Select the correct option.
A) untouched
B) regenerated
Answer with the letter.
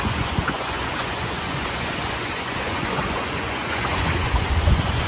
B